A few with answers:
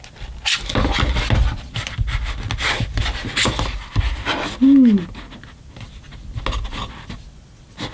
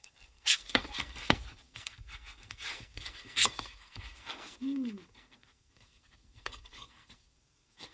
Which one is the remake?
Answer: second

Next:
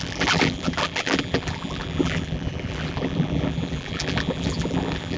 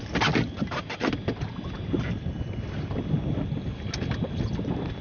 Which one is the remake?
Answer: first